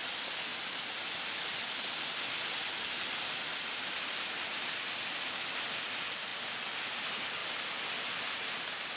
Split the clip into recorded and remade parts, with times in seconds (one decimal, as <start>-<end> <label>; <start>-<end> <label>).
0.0-9.0 recorded